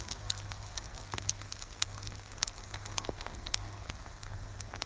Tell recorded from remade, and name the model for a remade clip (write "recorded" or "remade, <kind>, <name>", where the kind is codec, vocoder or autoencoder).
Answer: remade, codec, SNAC